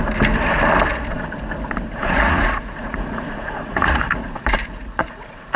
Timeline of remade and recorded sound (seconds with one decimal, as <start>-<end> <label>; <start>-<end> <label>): 0.0-0.9 recorded; 0.9-1.4 remade; 1.4-2.0 recorded; 2.0-5.6 remade